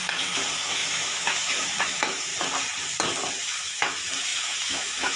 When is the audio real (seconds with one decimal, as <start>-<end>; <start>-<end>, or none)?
2.3-3.3